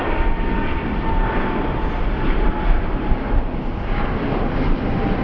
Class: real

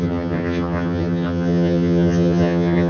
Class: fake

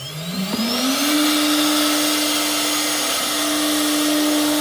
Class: real